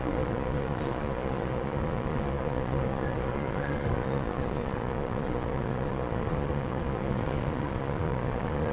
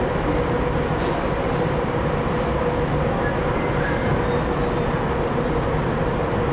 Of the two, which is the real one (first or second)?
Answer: second